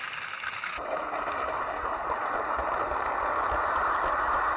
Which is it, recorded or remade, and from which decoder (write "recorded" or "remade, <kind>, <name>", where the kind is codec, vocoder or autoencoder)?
recorded